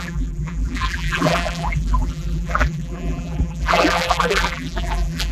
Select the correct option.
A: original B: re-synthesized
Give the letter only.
B